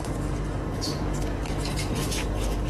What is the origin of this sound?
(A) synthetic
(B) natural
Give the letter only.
A